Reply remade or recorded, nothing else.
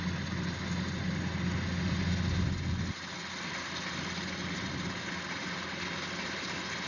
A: recorded